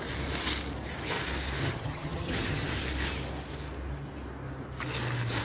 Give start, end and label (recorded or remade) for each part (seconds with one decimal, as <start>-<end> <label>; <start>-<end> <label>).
0.0-1.6 recorded; 1.6-2.7 remade; 2.7-5.4 recorded